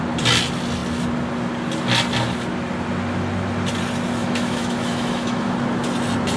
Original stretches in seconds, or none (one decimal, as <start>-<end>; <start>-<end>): 0.0-4.2; 5.5-6.4